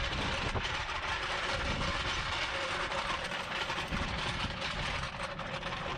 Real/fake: fake